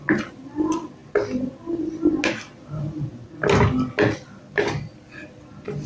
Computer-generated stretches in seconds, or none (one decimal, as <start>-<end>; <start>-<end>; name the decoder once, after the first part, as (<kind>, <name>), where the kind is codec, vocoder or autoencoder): none